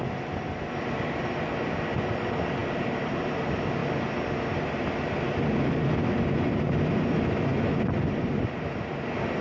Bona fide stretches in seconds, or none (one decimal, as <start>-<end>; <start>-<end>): 0.0-9.4